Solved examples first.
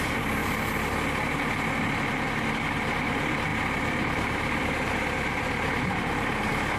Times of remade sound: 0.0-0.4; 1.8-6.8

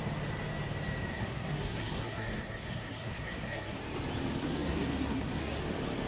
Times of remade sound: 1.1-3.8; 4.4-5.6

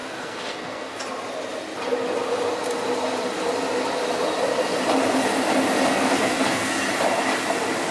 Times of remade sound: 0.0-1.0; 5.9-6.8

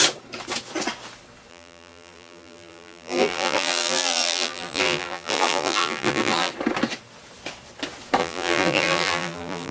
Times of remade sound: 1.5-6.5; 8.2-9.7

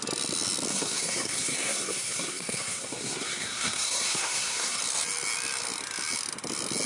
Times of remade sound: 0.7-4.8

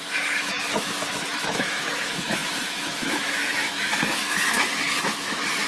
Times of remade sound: 0.0-5.7

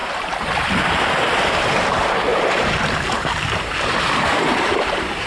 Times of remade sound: 0.0-5.3

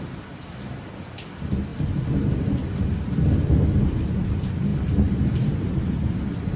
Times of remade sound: none